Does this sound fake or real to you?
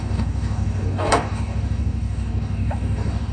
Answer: fake